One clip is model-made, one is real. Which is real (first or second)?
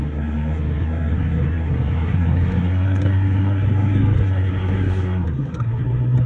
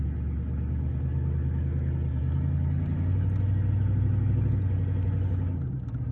second